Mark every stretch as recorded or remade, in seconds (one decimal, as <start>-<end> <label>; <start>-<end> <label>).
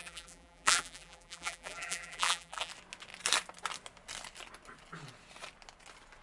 0.0-2.7 remade; 2.7-6.2 recorded